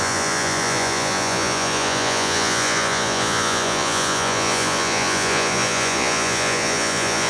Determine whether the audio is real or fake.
fake